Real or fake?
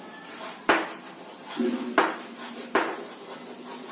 real